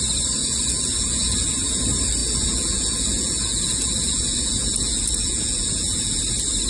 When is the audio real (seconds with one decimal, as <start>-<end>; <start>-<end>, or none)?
0.0-0.4; 1.8-2.2; 6.2-6.7